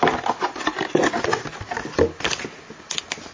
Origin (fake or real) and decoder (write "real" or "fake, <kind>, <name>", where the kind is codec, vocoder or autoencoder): real